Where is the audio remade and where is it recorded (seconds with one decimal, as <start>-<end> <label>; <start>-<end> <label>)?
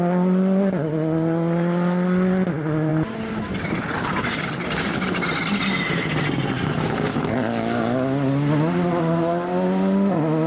0.0-10.5 recorded